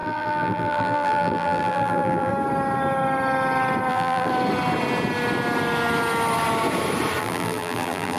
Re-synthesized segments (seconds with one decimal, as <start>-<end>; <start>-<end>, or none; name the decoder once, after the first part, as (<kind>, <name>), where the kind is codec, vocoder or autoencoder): 0.0-2.3 (vocoder, BigVGAN v2); 3.9-4.3; 7.2-8.2